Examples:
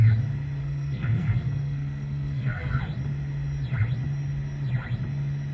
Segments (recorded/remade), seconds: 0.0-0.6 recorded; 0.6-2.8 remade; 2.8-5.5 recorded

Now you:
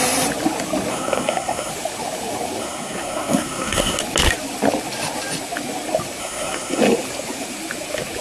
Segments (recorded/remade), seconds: 0.0-0.9 recorded; 0.9-1.7 remade; 1.7-2.6 recorded; 2.6-4.0 remade; 4.0-6.2 recorded; 6.2-6.8 remade; 6.8-8.2 recorded

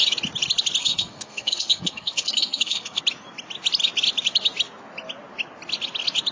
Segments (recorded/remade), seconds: 0.0-0.8 recorded; 0.8-3.0 remade; 3.0-6.3 recorded

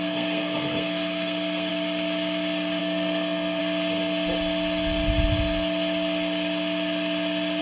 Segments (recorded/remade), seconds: 0.0-1.7 remade; 1.7-2.8 recorded; 2.8-3.6 remade; 3.6-7.6 recorded